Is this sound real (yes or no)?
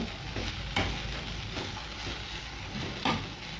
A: yes